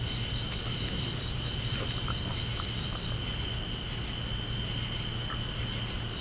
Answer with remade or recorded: recorded